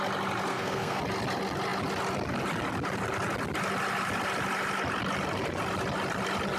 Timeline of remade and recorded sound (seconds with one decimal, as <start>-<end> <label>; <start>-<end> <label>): 0.0-0.5 recorded; 0.5-1.0 remade; 1.0-6.6 recorded